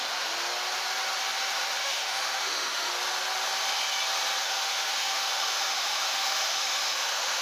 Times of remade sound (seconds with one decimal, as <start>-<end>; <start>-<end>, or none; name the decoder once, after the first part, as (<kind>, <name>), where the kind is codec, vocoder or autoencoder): 1.8-2.9 (autoencoder, DAC-VAE); 4.4-7.4